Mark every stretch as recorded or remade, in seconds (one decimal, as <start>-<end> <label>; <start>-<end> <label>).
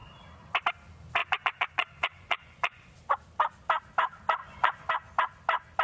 0.0-1.2 recorded; 1.2-2.9 remade; 2.9-4.4 recorded; 4.4-4.9 remade; 4.9-5.8 recorded